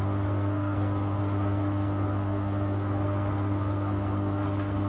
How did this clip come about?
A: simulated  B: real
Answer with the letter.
A